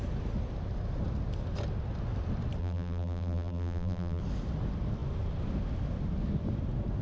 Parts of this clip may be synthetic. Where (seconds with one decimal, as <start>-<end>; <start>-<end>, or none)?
2.6-4.2